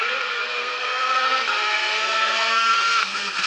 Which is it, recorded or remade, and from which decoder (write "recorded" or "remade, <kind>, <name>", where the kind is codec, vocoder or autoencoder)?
remade, codec, SNAC